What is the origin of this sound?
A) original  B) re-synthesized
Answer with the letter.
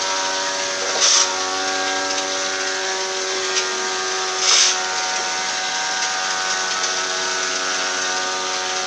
B